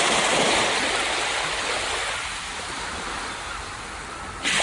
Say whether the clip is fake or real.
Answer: real